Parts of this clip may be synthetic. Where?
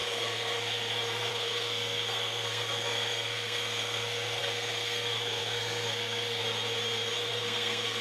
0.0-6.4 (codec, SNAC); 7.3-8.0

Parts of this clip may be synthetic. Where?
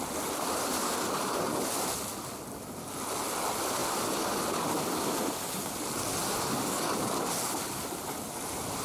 none